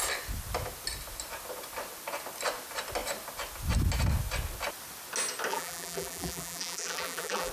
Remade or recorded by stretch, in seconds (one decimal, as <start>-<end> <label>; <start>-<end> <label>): 0.0-5.5 recorded; 5.5-7.5 remade